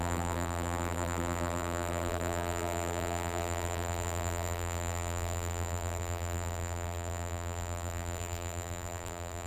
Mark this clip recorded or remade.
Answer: remade